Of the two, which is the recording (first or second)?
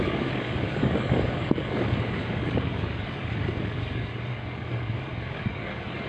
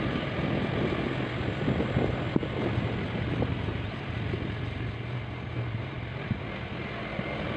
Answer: second